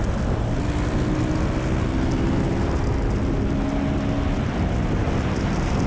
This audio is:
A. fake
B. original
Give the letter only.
B